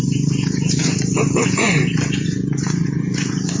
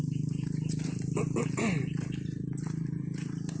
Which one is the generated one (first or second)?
first